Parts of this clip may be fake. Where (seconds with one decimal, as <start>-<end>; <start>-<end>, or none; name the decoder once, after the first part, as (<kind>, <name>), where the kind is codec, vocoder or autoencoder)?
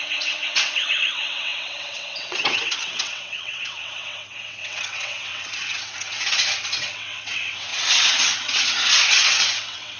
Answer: 0.0-10.0 (vocoder, WaveNeXt)